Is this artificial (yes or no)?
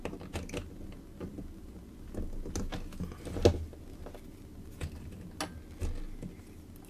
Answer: no